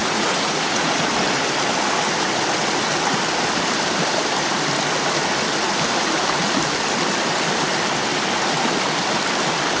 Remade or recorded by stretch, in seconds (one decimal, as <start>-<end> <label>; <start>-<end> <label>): 0.0-1.1 remade; 1.1-9.8 recorded